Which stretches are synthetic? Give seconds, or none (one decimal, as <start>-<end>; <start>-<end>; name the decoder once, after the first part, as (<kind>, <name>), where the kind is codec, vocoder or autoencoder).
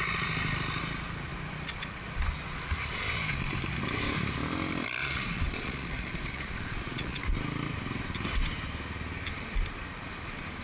5.0-7.2 (vocoder, Vocos)